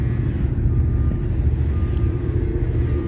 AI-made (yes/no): no